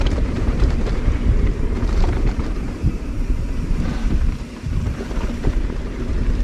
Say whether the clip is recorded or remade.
remade